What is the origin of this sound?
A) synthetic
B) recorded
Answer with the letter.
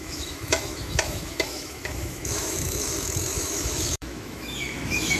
A